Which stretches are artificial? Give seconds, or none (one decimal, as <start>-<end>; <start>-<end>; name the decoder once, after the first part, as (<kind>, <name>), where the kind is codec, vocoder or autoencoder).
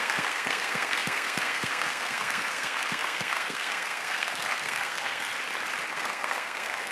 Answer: 0.0-5.3 (codec, SNAC); 5.9-6.9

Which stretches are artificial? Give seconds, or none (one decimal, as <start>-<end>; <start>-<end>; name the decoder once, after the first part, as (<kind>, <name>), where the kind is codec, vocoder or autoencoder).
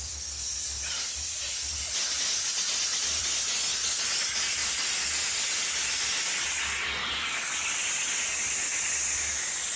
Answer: none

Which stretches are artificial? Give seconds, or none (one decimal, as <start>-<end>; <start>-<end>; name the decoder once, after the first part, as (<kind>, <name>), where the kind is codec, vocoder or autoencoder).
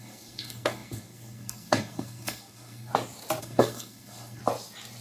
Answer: 0.0-2.9 (codec, SNAC); 3.4-4.4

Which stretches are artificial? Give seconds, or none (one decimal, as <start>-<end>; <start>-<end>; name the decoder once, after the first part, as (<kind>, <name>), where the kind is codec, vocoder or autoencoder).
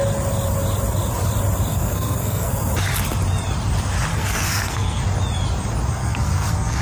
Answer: 1.7-2.7 (codec, SNAC); 4.1-5.0; 6.0-6.8